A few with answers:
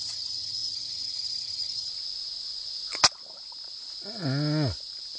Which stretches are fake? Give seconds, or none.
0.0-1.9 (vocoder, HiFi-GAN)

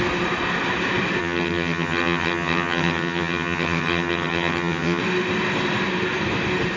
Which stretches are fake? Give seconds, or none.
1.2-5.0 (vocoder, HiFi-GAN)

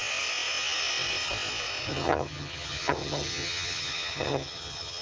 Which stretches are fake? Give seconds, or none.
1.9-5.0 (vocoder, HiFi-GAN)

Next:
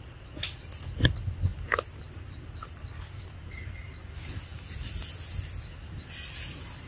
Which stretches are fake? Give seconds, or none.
none